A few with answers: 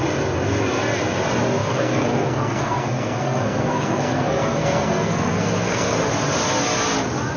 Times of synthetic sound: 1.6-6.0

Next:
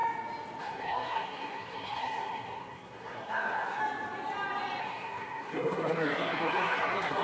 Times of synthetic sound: 0.6-3.8; 4.8-7.2